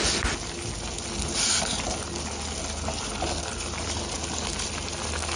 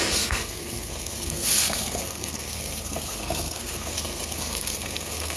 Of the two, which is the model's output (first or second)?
second